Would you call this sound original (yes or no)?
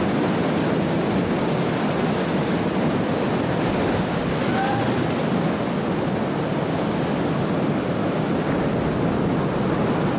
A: yes